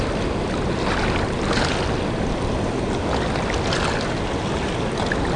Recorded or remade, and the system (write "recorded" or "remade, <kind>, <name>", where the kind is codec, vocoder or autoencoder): recorded